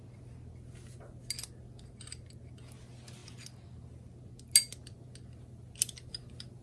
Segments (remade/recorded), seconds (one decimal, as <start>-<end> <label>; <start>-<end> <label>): 0.0-6.6 recorded